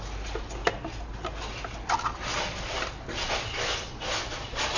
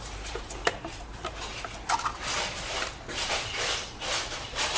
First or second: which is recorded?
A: first